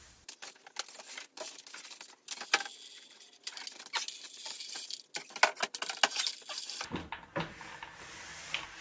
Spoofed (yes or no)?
no